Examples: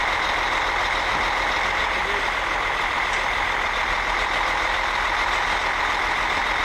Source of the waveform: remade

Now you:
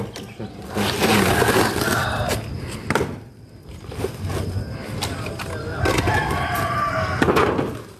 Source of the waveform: recorded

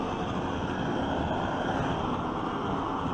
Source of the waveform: recorded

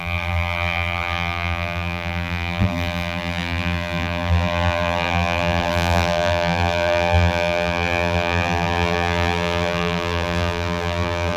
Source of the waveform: remade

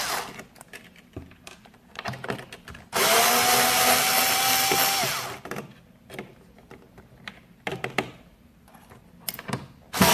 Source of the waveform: recorded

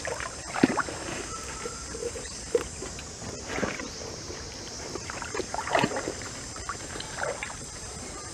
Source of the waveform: remade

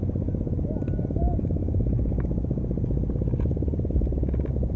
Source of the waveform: recorded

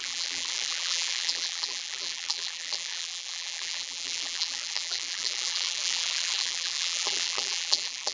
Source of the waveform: remade